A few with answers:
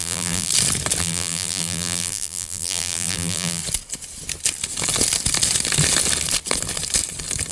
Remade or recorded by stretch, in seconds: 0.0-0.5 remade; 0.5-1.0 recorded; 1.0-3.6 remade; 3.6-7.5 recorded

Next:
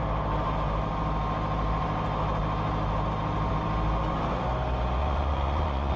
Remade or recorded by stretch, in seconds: 0.0-5.0 recorded; 5.0-6.0 remade